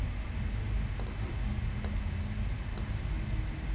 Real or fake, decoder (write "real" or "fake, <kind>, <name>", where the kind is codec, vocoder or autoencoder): real